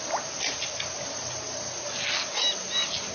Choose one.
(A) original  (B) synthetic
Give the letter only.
A